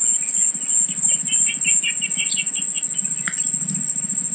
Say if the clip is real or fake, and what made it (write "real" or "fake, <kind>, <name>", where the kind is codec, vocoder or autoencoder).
real